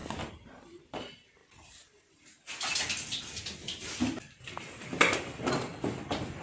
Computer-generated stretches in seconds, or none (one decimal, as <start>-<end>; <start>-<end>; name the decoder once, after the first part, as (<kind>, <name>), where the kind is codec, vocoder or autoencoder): 0.7-1.4 (vocoder, BigVGAN v2); 4.4-5.7